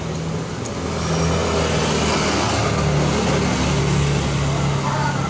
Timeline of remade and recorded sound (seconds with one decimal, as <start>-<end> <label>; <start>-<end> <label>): 0.0-5.3 recorded